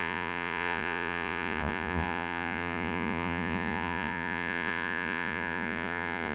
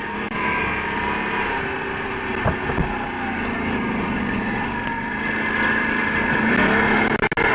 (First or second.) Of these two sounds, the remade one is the first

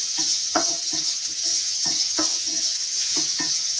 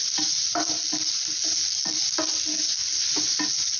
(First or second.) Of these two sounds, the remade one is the first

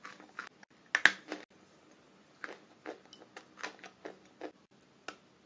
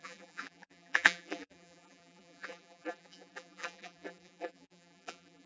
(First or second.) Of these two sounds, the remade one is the second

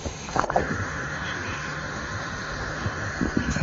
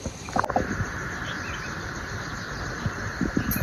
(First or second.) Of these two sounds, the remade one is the first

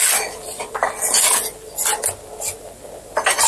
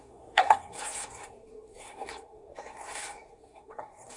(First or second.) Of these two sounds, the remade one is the second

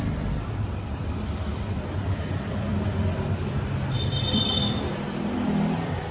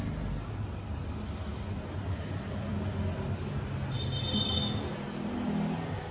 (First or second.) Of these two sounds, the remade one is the first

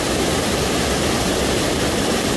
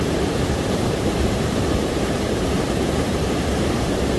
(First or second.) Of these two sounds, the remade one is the second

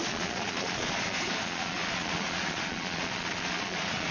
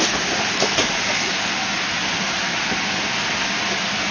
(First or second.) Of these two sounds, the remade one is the first